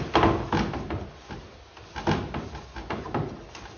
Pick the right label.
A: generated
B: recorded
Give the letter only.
B